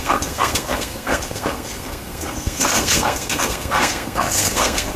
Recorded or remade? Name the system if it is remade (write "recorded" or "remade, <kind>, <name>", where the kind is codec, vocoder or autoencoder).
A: remade, codec, SNAC